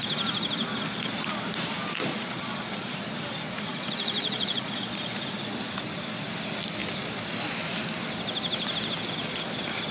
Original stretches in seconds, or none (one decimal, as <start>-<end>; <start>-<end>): 0.0-2.1; 2.9-3.7; 5.3-9.9